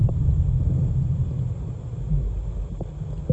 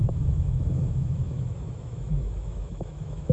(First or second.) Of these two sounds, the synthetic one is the second